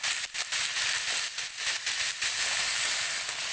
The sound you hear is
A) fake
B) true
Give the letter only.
B